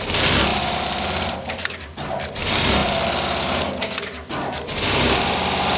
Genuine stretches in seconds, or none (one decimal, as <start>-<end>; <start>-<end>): 0.0-0.5; 2.4-2.8